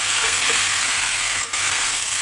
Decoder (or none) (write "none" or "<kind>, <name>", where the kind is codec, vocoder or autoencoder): codec, SNAC